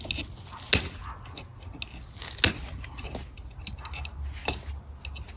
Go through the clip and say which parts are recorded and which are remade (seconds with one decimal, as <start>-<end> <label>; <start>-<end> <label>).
0.0-5.4 recorded